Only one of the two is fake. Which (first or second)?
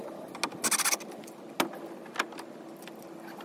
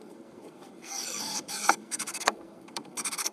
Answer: second